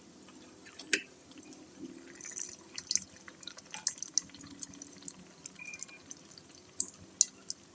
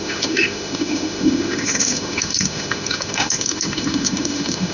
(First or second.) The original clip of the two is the first